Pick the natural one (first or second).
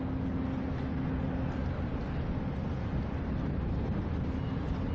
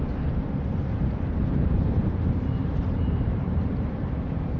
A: first